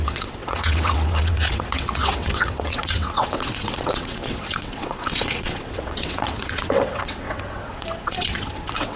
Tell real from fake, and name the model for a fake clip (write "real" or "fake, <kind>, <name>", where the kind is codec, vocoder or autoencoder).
fake, vocoder, WaveNeXt